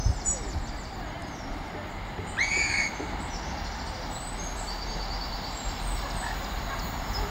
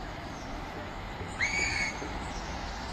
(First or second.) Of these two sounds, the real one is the first